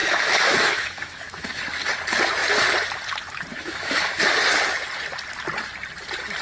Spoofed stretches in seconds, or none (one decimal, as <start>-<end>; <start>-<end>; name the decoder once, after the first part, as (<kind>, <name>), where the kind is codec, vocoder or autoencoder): 0.0-1.6 (autoencoder, DAC-VAE); 3.5-4.2